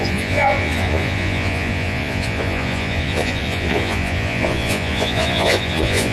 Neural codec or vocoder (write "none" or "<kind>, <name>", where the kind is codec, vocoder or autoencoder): vocoder, Vocos